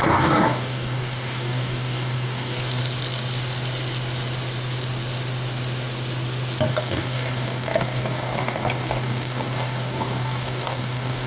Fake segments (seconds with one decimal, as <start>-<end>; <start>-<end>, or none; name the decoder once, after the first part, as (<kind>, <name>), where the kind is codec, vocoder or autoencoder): 0.0-2.8 (codec, DAC); 6.7-11.3